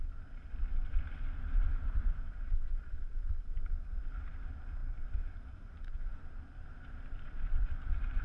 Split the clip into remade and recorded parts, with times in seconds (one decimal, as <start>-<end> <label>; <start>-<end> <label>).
0.0-4.8 recorded; 4.8-8.2 remade